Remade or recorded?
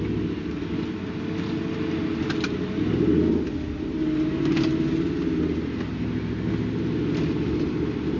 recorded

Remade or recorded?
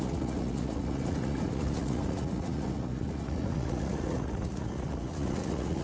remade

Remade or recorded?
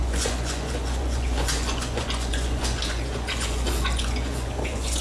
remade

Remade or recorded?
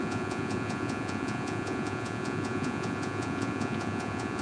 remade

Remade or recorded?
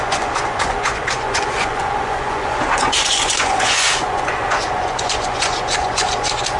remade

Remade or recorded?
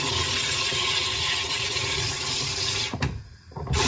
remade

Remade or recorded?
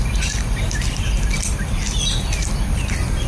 recorded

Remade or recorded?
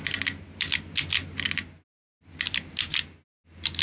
recorded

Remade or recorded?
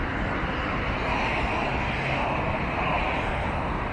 recorded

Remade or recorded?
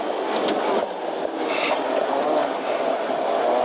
recorded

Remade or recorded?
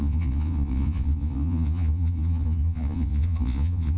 remade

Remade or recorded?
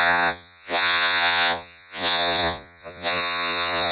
remade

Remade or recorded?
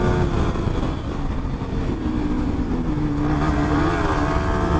recorded